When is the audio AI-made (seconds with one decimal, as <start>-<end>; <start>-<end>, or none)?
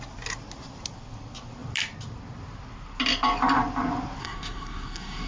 4.2-5.3